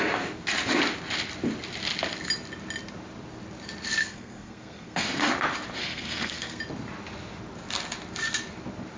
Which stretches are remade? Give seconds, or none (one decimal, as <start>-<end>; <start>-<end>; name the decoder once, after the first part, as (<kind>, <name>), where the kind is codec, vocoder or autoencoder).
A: 4.0-5.3 (codec, SNAC); 5.8-6.6